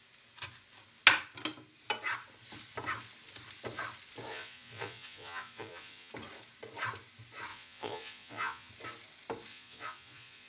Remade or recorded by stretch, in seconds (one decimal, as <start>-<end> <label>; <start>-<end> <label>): 0.0-4.3 recorded; 4.3-6.1 remade; 6.1-7.5 recorded; 7.5-8.7 remade; 8.7-9.5 recorded; 9.5-10.5 remade